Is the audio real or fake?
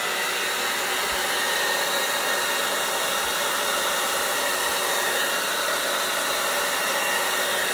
real